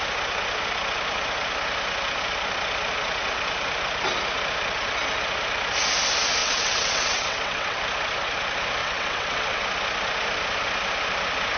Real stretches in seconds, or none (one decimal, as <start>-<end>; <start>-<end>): 0.0-6.4; 7.8-8.8; 9.6-11.6